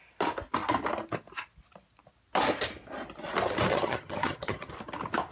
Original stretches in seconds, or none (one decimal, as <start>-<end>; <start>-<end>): 0.0-3.7; 4.7-5.3